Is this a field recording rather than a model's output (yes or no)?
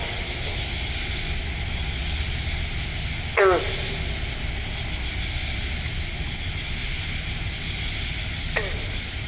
yes